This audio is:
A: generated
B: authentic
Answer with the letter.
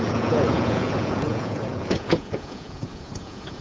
A